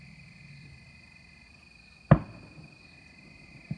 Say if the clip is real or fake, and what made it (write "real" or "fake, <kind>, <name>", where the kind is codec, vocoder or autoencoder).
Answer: real